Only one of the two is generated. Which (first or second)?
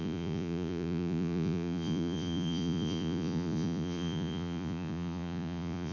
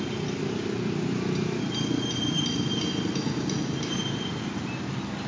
first